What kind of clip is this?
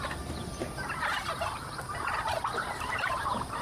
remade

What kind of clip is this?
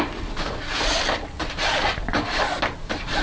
recorded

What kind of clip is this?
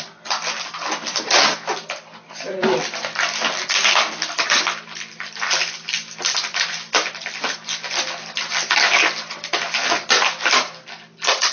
recorded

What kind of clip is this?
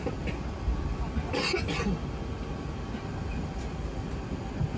recorded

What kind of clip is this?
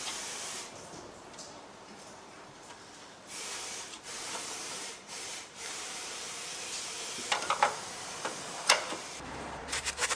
remade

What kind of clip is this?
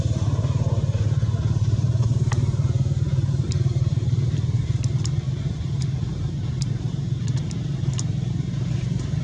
remade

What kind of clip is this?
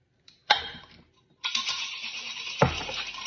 remade